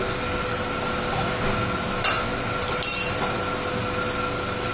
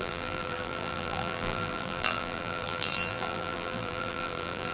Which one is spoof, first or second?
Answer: second